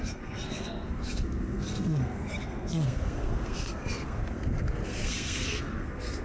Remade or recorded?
remade